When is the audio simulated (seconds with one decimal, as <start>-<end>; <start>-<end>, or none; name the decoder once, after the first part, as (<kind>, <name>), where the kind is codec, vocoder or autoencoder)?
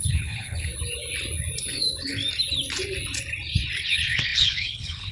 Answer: 0.0-0.7 (codec, HILCodec); 1.6-2.2; 3.9-5.1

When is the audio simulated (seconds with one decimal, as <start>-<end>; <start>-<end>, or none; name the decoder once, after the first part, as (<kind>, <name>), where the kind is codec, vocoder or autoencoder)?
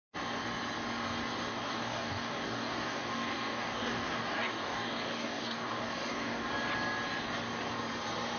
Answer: 1.5-6.5 (codec, DAC)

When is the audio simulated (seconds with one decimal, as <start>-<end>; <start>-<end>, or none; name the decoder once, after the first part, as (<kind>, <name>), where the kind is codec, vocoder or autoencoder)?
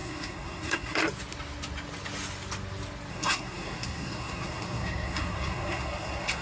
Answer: 0.0-1.0 (codec, SNAC); 3.1-6.4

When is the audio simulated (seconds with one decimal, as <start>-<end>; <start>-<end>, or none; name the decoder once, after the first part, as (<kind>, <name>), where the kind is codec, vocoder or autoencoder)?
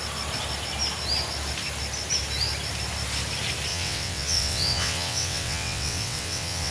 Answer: 3.7-6.7 (vocoder, WaveNeXt)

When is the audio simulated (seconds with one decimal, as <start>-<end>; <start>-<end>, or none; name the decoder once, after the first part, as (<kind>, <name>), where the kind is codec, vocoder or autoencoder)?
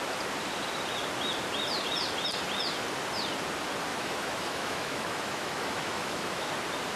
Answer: 3.9-6.5 (autoencoder, DAC-VAE)